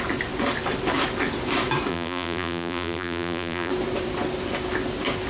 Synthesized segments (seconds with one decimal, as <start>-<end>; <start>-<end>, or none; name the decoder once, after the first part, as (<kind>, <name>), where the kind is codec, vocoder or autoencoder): 1.9-3.7 (vocoder, BigVGAN v2)